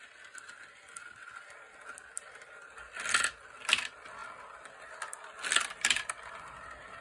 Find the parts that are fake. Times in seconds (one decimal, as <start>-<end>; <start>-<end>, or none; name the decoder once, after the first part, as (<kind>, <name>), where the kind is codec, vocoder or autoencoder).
none

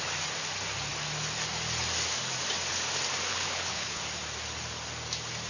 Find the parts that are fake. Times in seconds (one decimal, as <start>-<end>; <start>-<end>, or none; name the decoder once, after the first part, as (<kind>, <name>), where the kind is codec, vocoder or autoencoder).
3.3-4.0 (codec, HILCodec)

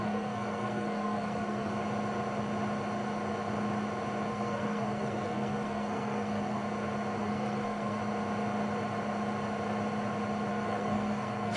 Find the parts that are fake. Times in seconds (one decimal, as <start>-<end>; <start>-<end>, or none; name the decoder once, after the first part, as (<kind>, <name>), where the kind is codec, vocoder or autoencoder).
0.0-1.7 (codec, SNAC); 4.3-6.6; 7.2-8.0; 10.5-11.6